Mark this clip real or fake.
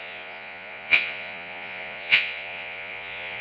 fake